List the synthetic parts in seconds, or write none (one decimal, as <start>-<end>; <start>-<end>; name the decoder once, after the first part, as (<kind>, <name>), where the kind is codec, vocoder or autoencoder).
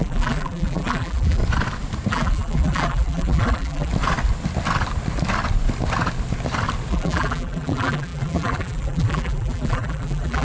0.0-1.4 (vocoder, BigVGAN v2); 2.1-3.9; 6.9-10.4